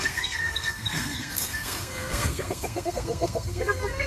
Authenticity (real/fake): fake